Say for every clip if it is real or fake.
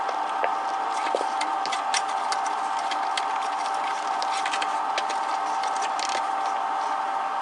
real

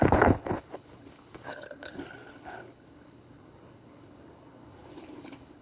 fake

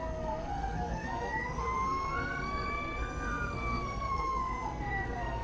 fake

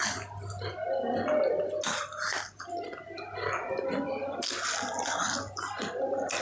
real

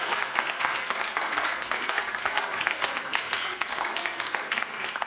fake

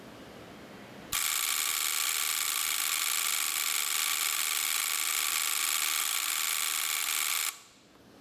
real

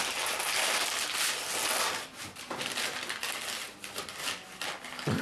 real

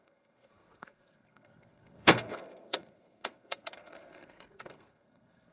fake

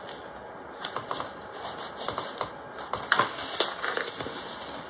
real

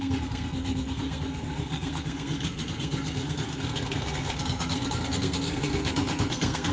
fake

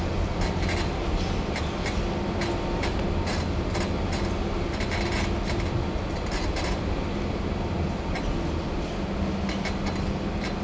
real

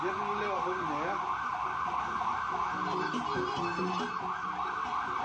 real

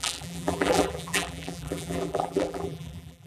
fake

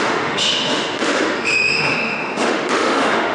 fake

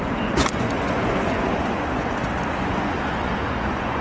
fake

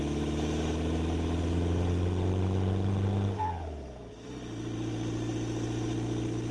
real